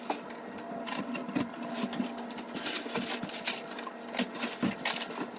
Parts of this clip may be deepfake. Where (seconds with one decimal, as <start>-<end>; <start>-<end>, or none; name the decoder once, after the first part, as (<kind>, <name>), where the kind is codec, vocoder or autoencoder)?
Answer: 1.2-1.8 (vocoder, BigVGAN v2)